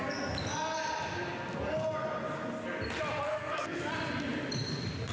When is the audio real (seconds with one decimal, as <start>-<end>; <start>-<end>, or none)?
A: 0.0-3.3; 3.8-5.1